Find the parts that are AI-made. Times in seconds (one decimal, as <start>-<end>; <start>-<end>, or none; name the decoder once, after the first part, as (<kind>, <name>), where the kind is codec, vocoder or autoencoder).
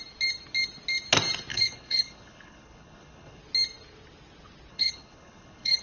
1.5-3.4 (codec, HILCodec); 4.7-5.8